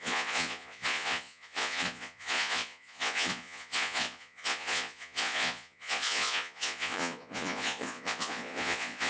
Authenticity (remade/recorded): remade